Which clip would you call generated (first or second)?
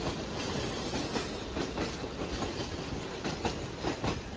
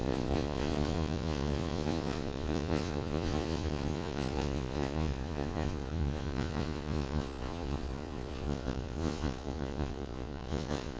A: second